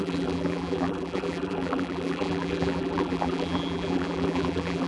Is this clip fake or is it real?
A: fake